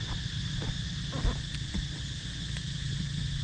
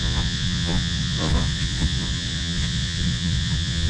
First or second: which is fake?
second